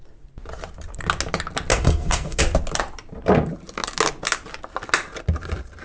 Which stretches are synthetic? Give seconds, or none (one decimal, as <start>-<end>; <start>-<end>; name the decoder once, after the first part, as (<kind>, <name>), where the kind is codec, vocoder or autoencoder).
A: 1.7-2.4 (codec, SNAC)